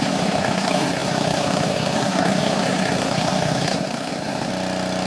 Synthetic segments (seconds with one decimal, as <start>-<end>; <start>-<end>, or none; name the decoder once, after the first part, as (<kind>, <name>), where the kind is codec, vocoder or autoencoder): 0.0-4.5 (codec, SNAC)